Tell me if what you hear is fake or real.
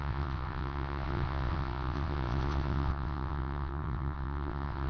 fake